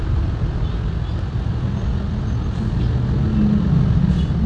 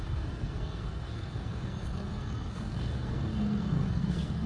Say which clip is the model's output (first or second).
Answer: second